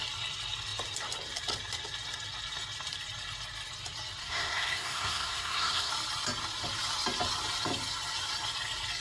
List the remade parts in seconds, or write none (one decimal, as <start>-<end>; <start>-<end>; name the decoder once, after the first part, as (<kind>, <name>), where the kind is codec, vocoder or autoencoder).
4.2-5.9 (codec, SNAC)